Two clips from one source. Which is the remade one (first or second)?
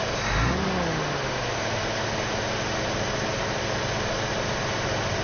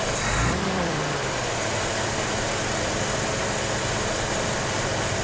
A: second